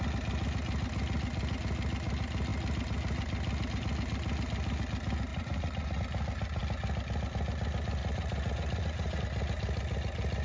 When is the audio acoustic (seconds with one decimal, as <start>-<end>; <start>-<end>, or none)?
0.0-5.3; 6.0-8.0; 9.2-10.4